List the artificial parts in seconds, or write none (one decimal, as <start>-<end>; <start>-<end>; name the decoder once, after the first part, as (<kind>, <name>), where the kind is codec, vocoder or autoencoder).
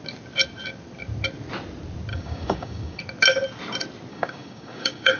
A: 2.1-3.0 (codec, DAC); 4.1-5.2